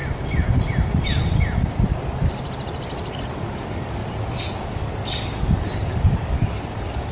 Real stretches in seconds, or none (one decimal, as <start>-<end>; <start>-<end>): 0.0-3.3; 4.0-4.6